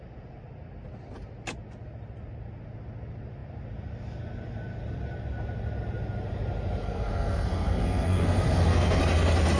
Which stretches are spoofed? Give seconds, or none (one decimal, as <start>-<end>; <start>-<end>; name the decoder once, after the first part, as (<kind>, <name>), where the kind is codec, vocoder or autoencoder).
6.8-9.0 (codec, SNAC)

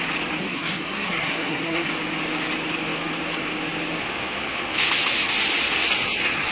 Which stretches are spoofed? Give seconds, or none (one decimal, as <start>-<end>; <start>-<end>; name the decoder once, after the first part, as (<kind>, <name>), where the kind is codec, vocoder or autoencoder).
0.4-1.9 (codec, SNAC)

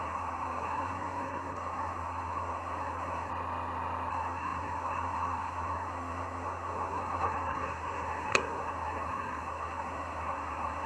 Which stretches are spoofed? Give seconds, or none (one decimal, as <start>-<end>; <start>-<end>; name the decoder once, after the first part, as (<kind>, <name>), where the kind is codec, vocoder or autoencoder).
0.0-3.3 (codec, SNAC); 4.1-10.9

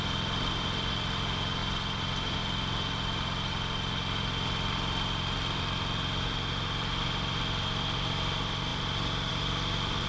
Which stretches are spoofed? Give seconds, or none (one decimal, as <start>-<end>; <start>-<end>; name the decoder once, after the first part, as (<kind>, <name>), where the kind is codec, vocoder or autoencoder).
none

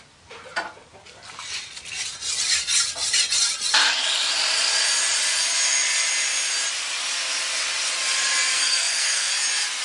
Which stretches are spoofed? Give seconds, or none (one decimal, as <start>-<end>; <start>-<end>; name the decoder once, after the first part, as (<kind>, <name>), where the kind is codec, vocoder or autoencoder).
8.5-9.3 (codec, SNAC)

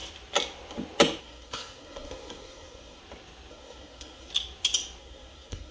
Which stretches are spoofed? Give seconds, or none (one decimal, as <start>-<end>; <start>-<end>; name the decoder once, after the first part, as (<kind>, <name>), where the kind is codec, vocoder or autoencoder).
1.2-3.0 (codec, SNAC); 3.5-4.3; 5.0-5.7

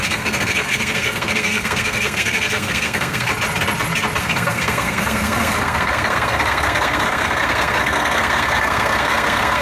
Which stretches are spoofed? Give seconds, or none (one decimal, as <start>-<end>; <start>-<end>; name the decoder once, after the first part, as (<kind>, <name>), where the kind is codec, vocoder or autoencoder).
0.0-3.3 (codec, SNAC); 4.2-9.6